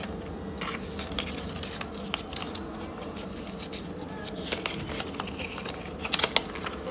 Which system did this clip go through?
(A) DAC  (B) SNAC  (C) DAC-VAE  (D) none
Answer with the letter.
D